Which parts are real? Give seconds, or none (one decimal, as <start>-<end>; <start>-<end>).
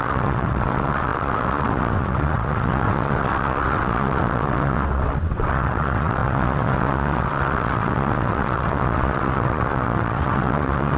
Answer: none